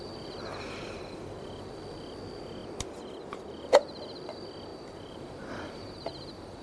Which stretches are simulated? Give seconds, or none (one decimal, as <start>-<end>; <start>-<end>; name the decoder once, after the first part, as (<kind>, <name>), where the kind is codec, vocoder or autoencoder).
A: 0.5-1.3 (vocoder, BigVGAN v2); 4.7-6.6

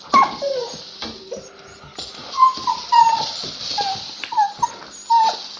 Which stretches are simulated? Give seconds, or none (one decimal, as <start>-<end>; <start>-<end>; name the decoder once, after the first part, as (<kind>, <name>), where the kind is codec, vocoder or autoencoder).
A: none

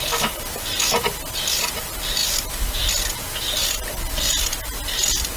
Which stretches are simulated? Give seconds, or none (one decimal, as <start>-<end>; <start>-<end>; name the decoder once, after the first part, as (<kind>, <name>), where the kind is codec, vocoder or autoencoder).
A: none

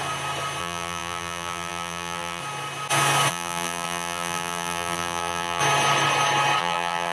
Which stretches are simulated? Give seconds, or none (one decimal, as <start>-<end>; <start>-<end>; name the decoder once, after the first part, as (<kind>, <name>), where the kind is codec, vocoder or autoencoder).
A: 0.6-2.4 (vocoder, BigVGAN v2); 3.3-5.6; 6.6-7.1

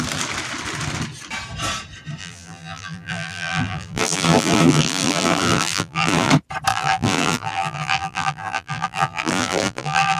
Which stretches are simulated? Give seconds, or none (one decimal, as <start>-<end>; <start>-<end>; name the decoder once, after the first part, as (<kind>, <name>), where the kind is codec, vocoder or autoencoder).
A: 2.2-6.3 (vocoder, BigVGAN v2); 6.7-10.2

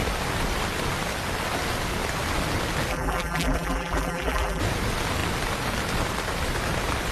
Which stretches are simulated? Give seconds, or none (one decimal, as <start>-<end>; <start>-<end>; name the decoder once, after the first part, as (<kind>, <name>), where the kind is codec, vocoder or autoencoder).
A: 2.9-4.6 (vocoder, BigVGAN v2)

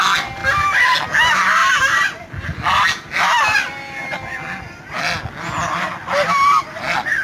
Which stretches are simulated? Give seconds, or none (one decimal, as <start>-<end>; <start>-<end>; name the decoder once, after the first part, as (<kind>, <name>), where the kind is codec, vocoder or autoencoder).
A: none